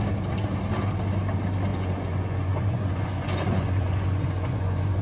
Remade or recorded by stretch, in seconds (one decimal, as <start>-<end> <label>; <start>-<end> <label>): 0.0-1.7 recorded; 1.7-5.0 remade